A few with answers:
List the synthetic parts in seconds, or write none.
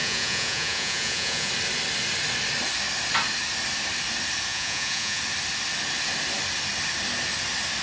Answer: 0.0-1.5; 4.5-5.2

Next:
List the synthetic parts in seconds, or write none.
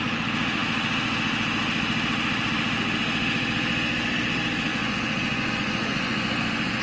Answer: 4.7-6.8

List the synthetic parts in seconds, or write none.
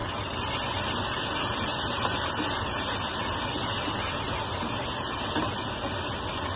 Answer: none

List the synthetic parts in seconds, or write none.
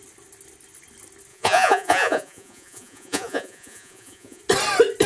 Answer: 1.3-4.4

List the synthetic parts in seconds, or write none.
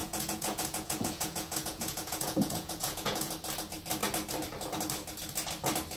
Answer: 0.0-3.3